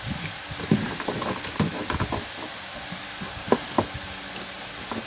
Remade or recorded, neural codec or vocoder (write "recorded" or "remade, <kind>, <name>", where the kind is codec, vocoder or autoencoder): recorded